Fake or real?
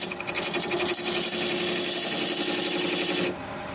real